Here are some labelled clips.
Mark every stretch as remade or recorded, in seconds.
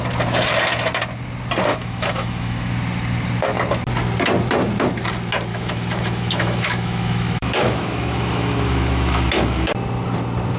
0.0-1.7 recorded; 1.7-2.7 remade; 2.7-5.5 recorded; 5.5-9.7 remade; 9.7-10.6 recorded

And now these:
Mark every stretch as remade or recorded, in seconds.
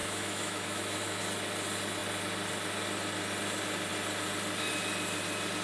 0.0-1.2 remade; 1.2-5.6 recorded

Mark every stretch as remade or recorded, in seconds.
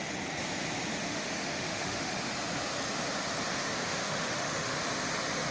0.0-0.9 recorded; 0.9-2.3 remade; 2.3-3.5 recorded; 3.5-4.8 remade; 4.8-5.5 recorded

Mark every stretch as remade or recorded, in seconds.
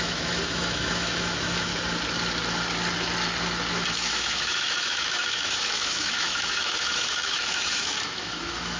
0.0-1.7 remade; 1.7-3.7 recorded; 3.7-8.8 remade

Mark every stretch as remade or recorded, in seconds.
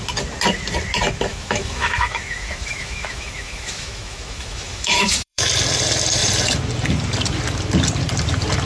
0.0-1.3 recorded; 1.3-5.5 remade; 5.5-8.7 recorded